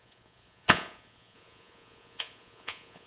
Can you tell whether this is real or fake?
fake